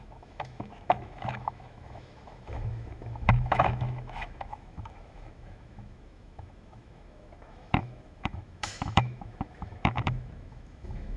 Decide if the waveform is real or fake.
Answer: fake